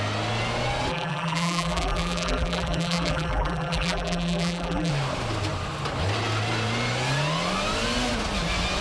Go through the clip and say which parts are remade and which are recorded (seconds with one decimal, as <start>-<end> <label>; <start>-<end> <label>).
0.0-0.9 recorded; 0.9-4.9 remade; 4.9-8.8 recorded